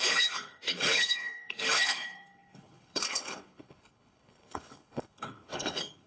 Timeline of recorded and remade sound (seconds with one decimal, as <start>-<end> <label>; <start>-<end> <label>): 0.0-6.1 remade